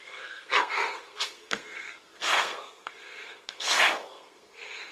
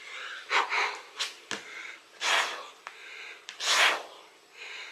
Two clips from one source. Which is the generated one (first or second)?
first